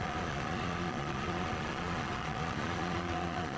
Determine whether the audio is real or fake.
fake